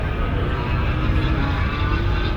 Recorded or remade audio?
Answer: recorded